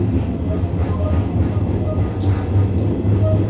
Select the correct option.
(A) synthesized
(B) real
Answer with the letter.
B